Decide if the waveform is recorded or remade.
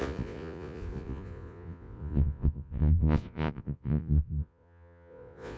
remade